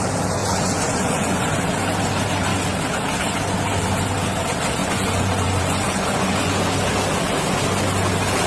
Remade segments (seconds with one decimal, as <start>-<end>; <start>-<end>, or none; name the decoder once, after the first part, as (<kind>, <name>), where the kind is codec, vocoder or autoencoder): 0.4-1.5 (vocoder, Vocos); 4.8-6.5

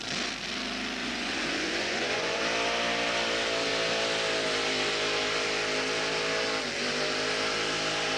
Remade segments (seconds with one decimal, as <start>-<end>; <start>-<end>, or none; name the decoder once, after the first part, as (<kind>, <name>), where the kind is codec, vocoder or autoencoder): 1.0-2.4 (vocoder, Vocos)

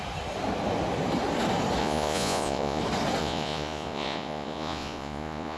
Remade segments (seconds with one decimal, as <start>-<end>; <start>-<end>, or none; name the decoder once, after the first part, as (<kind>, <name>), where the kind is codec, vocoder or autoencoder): 1.8-2.8 (vocoder, Vocos); 3.2-5.6